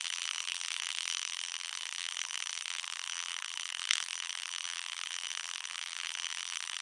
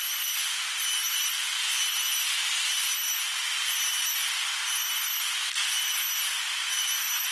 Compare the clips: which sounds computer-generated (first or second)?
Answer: first